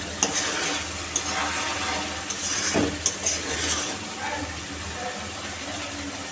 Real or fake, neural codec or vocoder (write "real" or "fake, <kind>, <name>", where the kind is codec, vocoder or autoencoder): real